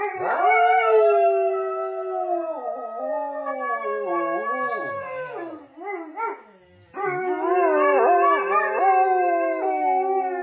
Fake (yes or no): no